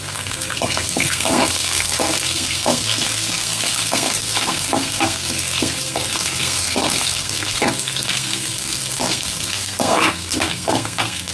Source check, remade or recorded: remade